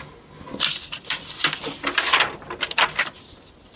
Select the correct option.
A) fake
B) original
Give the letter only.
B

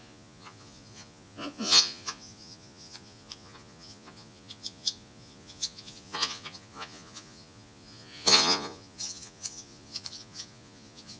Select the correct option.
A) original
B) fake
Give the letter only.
B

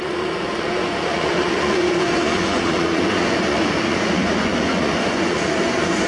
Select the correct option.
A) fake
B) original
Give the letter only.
A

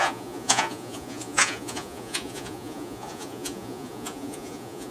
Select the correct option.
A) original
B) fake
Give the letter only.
B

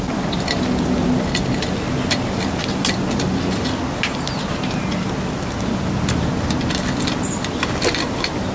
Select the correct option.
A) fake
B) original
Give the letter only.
B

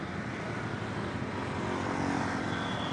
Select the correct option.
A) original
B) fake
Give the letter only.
A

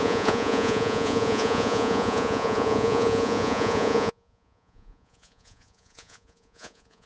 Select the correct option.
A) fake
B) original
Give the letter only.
A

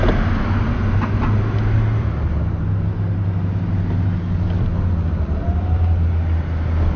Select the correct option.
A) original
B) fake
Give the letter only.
A